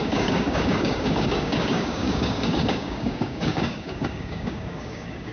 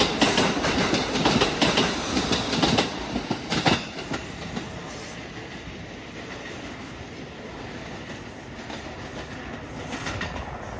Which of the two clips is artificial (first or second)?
first